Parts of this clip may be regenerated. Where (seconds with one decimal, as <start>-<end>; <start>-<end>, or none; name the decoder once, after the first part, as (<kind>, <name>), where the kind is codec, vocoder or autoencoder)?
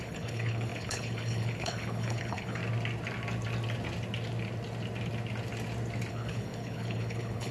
0.0-2.6 (codec, HILCodec); 6.1-7.5